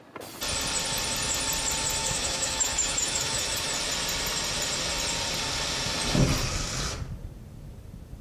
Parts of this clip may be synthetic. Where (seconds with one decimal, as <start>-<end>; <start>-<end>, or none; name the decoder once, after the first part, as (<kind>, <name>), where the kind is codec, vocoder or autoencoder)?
2.0-3.7 (autoencoder, DAC-VAE)